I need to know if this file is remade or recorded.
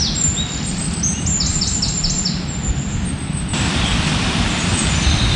recorded